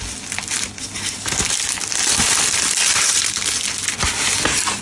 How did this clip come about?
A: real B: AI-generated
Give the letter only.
A